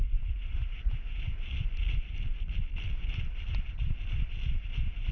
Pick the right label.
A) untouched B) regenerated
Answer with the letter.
A